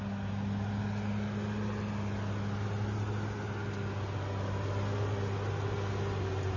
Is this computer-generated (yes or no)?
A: no